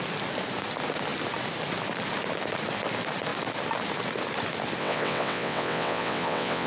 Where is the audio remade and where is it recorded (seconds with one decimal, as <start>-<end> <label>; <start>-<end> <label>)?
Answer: 0.0-4.8 recorded; 4.8-6.7 remade